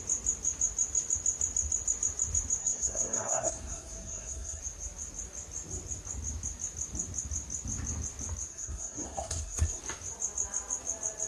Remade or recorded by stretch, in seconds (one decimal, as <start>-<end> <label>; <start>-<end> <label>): 0.0-2.6 recorded; 2.6-4.6 remade; 4.6-8.5 recorded; 8.5-9.8 remade; 9.8-11.3 recorded